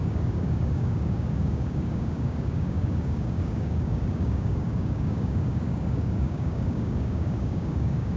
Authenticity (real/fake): fake